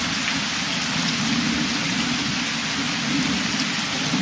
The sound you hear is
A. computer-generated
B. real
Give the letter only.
B